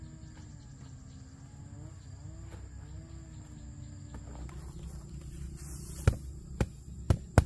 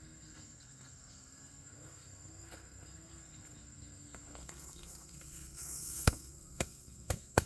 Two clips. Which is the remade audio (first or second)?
second